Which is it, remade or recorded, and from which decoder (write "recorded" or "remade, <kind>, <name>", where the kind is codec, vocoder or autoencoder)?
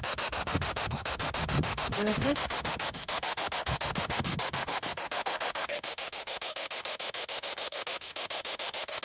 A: remade, autoencoder, DAC-VAE